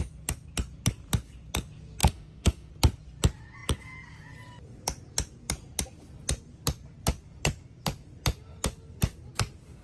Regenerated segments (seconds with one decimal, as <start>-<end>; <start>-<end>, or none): 2.0-2.7